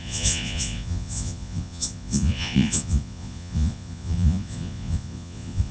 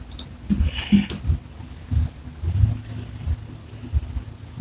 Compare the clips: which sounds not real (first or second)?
first